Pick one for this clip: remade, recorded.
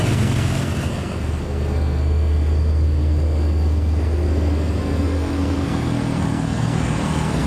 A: remade